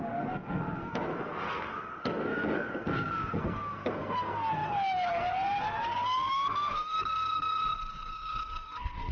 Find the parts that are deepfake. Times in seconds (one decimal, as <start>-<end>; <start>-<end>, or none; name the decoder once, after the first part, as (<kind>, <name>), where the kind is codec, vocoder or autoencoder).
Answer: 0.0-9.1 (codec, SNAC)